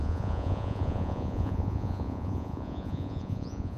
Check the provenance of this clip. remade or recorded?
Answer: remade